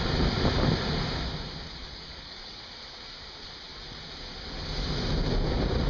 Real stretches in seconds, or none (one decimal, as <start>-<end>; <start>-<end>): 0.0-1.9; 2.6-5.9